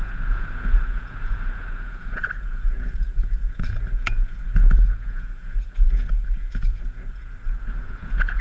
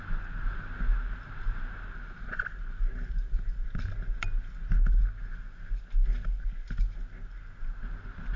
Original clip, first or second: second